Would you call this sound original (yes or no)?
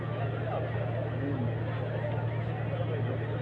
yes